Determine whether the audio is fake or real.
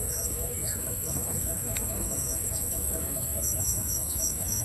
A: fake